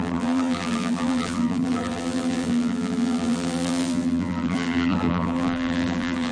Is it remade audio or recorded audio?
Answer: remade